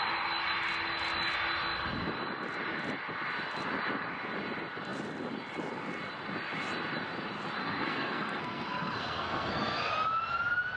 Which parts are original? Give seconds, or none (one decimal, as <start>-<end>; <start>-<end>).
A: 0.0-7.6; 9.9-10.8